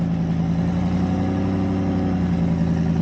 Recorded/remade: recorded